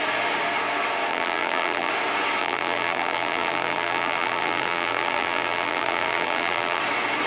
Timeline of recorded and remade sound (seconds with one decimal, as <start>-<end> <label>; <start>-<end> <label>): 0.0-1.1 recorded; 1.1-1.9 remade; 1.9-2.4 recorded; 2.4-6.8 remade; 6.8-7.3 recorded